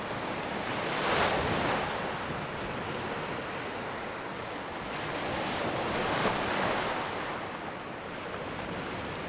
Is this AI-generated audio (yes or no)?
no